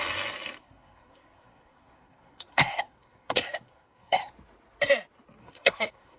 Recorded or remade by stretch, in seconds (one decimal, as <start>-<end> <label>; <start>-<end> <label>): 0.0-0.6 recorded; 0.6-4.3 remade; 4.3-5.4 recorded; 5.4-6.2 remade